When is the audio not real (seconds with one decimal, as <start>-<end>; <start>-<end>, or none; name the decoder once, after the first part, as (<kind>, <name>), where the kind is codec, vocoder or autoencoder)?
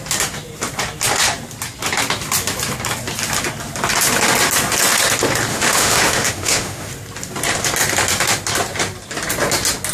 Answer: 5.5-6.9 (autoencoder, DAC-VAE)